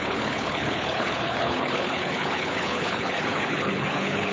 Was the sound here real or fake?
fake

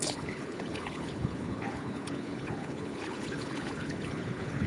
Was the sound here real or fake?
fake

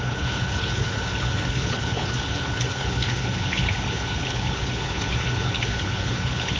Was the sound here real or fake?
fake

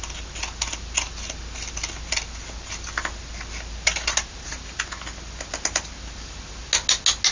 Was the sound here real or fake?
real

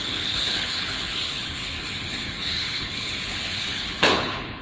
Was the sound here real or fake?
fake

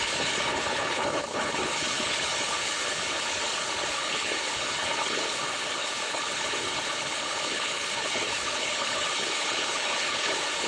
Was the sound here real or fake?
fake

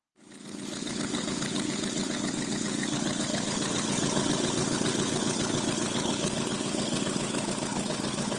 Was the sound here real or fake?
fake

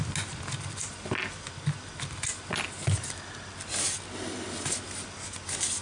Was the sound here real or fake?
real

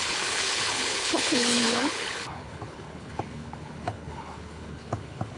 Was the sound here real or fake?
fake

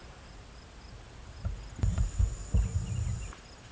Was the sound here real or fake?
real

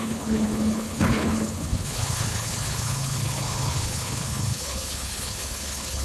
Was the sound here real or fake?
fake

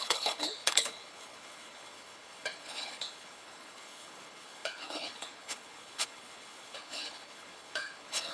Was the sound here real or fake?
fake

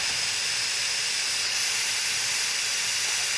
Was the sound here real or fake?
real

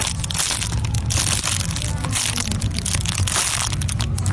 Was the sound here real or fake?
real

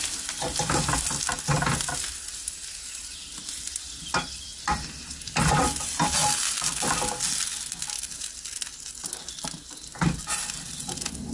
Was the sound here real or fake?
real